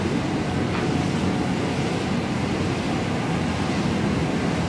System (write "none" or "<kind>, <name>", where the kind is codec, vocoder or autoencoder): none